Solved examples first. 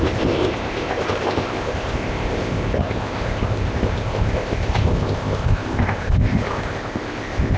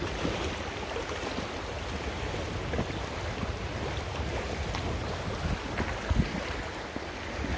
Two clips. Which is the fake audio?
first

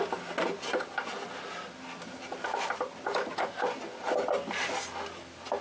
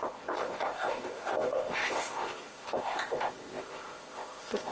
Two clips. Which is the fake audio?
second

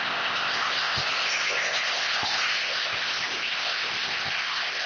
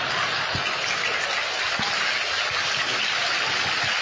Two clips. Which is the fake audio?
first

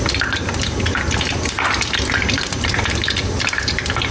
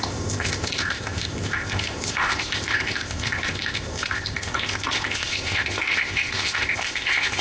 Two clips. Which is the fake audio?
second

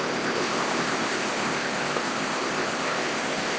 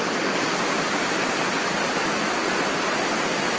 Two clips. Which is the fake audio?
first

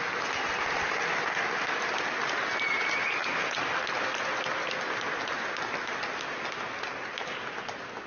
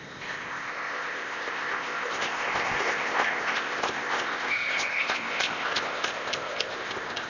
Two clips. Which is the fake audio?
second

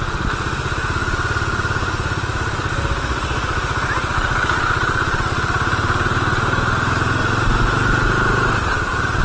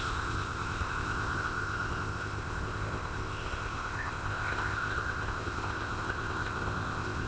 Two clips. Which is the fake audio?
second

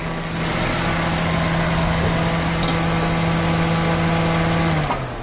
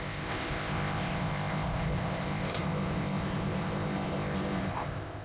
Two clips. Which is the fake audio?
second